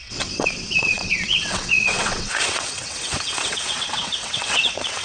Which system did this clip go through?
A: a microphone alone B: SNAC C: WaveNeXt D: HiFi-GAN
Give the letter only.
C